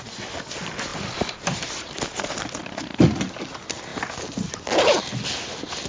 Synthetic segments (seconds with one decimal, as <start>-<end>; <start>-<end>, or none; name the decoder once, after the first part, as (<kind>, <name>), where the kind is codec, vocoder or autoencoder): 0.9-2.2 (vocoder, BigVGAN v2)